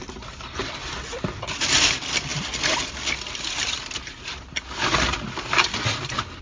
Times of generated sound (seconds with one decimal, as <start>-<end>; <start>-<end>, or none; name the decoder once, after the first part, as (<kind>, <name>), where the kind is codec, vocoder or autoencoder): none